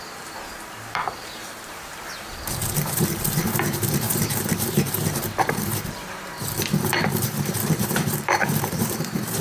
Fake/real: fake